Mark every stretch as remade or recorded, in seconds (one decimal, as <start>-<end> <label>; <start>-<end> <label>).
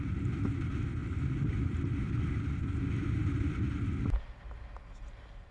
0.0-1.0 recorded; 1.0-2.4 remade; 2.4-5.5 recorded